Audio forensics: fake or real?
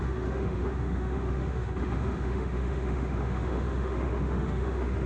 fake